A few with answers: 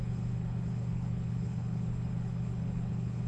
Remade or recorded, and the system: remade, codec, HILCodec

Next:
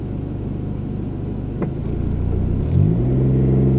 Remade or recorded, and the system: recorded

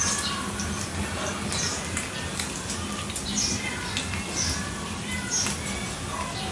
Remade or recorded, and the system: recorded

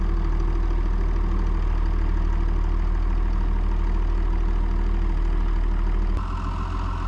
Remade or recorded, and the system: recorded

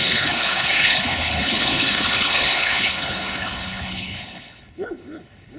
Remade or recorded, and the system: remade, codec, HILCodec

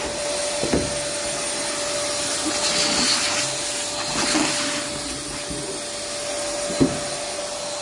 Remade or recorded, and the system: recorded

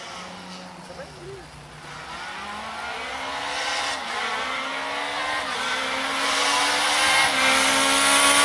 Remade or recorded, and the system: recorded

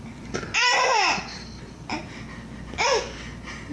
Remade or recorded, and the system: recorded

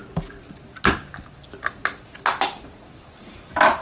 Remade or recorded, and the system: recorded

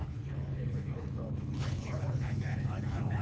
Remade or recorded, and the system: remade, codec, HILCodec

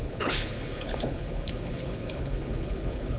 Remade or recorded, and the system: remade, codec, HILCodec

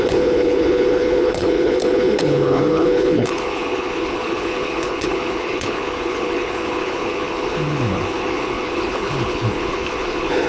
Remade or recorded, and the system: remade, codec, HILCodec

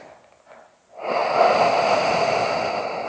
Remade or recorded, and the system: recorded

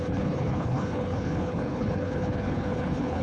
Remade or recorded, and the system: remade, codec, HILCodec